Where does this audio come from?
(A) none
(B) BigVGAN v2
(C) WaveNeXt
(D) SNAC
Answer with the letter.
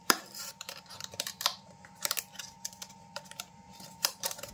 B